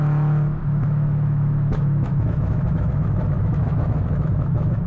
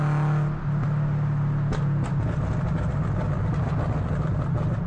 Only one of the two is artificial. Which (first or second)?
first